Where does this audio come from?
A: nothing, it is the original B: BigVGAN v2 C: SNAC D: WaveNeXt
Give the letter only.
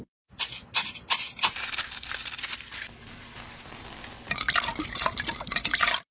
A